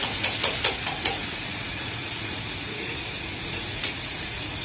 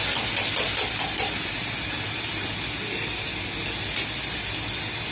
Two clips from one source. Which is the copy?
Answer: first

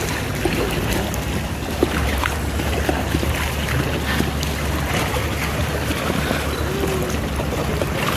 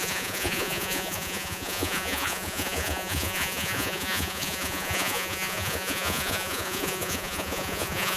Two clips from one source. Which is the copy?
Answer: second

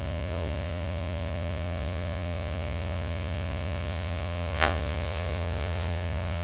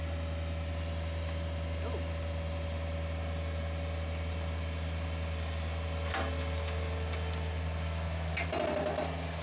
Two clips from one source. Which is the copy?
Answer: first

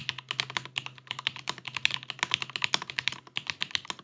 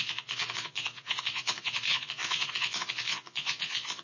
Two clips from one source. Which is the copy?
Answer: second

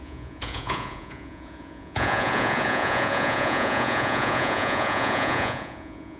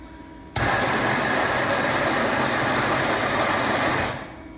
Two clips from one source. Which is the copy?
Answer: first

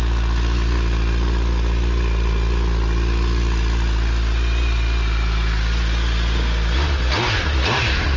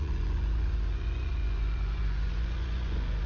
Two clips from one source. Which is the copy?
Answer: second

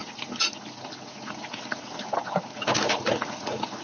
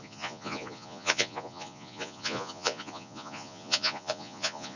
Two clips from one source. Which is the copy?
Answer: second